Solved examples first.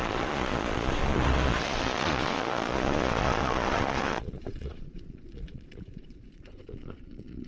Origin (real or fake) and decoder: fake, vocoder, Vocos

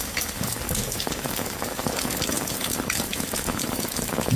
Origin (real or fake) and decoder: fake, codec, DAC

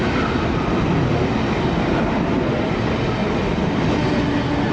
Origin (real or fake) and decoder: real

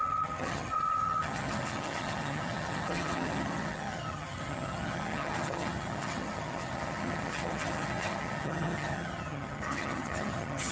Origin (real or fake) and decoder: fake, vocoder, HiFi-GAN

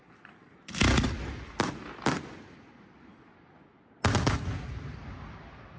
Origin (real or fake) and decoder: real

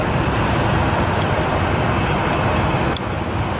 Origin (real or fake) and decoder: real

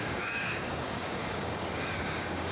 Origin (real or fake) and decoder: fake, codec, DAC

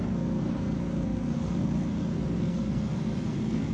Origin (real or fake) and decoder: fake, codec, SNAC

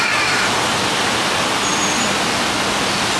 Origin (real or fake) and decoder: real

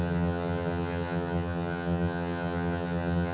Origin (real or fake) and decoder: fake, vocoder, HiFi-GAN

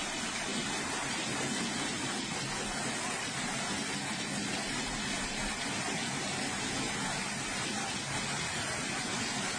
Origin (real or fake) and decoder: real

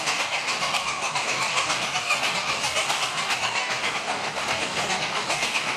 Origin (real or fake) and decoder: fake, codec, DAC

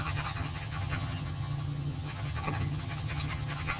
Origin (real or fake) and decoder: fake, vocoder, HiFi-GAN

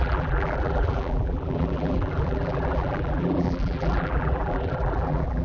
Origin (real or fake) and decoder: fake, vocoder, BigVGAN v2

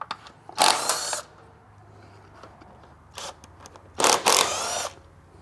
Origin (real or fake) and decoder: real